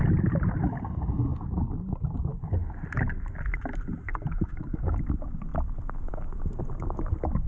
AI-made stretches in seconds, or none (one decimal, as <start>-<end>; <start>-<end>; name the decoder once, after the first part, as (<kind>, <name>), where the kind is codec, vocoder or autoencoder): 4.1-5.0 (codec, DAC)